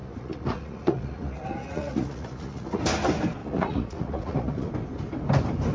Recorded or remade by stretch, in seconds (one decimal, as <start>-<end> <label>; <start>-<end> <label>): 0.0-2.8 remade; 2.8-3.4 recorded; 3.4-4.7 remade; 4.7-5.7 recorded